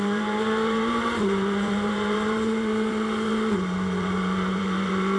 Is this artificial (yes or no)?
yes